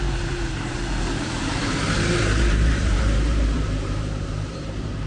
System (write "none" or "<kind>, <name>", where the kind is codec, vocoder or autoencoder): vocoder, BigVGAN v2